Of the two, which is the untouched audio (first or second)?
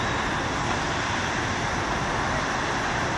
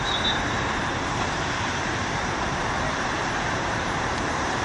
first